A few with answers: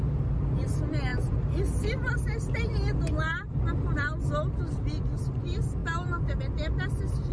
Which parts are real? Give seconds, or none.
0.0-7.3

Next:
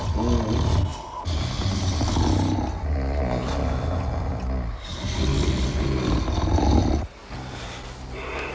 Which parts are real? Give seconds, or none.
0.0-8.5

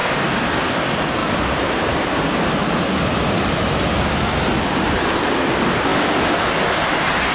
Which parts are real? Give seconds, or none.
0.0-7.3

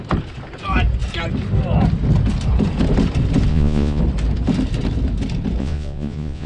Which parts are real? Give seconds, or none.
0.0-3.5; 4.0-5.6

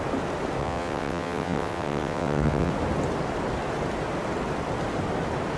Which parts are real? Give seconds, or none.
0.0-0.6; 2.7-5.6

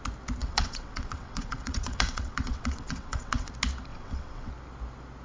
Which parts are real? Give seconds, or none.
0.0-0.4; 3.5-3.9; 4.5-5.2